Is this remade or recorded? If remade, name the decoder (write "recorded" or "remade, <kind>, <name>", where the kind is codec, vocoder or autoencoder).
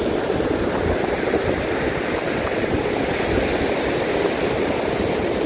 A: recorded